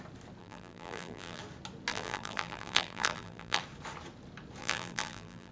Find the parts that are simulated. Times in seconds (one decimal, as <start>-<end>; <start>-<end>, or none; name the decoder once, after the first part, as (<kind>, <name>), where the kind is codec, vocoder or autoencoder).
0.4-1.4 (vocoder, BigVGAN v2); 1.9-3.6; 4.6-5.5